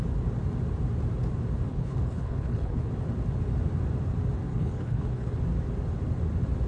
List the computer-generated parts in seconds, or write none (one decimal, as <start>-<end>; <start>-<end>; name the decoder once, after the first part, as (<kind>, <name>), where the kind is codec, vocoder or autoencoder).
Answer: 1.7-2.9 (codec, HILCodec); 4.5-5.3